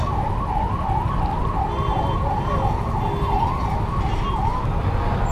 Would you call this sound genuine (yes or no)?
yes